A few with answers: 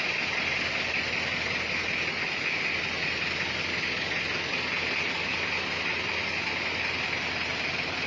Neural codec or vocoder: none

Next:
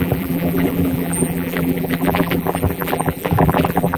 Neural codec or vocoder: vocoder, BigVGAN v2